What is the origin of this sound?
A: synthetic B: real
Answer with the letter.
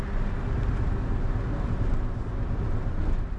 B